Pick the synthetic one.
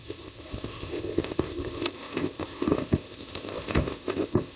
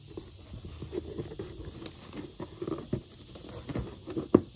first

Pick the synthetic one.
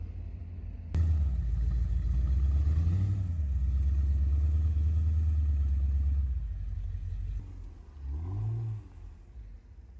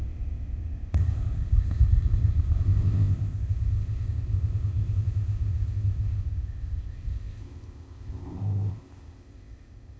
second